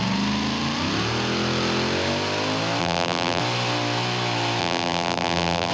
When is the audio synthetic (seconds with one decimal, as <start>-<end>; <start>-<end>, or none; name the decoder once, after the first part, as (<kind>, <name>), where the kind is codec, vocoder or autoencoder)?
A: 2.8-3.4 (vocoder, BigVGAN v2); 4.6-5.7